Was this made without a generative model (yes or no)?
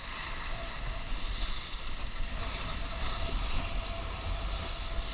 yes